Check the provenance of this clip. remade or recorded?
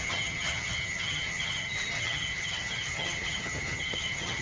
remade